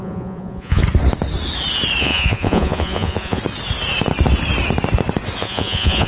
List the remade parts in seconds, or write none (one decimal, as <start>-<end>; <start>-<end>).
0.0-0.8; 2.0-3.4; 5.4-6.1